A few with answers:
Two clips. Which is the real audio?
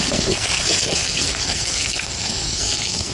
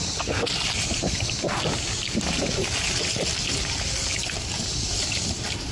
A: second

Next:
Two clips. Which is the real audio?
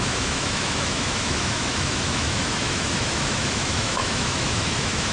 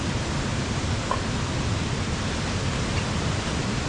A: second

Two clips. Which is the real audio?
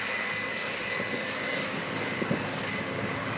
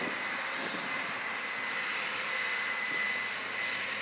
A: second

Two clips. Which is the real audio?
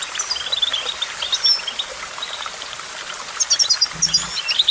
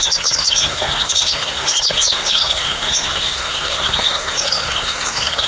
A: first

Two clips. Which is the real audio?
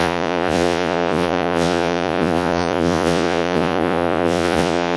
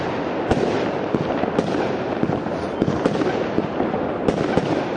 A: second